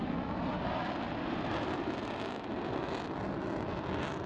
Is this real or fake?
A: real